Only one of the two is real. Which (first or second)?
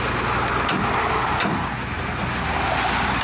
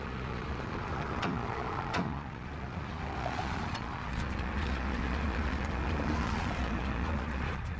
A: first